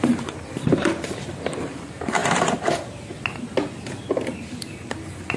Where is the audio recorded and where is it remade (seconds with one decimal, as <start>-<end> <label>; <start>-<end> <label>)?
0.0-2.2 remade; 2.2-4.3 recorded; 4.3-5.4 remade